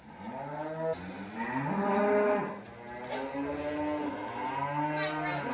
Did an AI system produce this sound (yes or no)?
no